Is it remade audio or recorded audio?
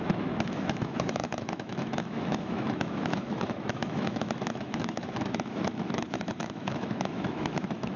remade